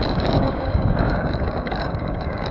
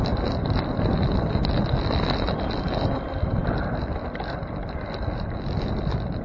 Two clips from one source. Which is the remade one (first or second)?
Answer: first